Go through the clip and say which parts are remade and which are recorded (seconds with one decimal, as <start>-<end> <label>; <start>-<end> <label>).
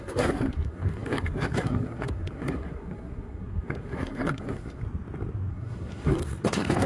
0.0-4.8 remade; 4.8-5.5 recorded; 5.5-6.9 remade